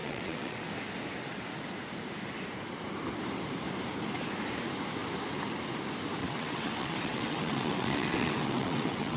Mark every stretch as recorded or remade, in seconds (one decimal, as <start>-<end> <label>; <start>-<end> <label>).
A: 0.0-0.7 remade; 0.7-6.2 recorded; 6.2-9.2 remade